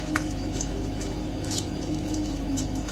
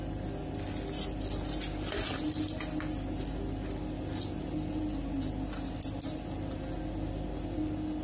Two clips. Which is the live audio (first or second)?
second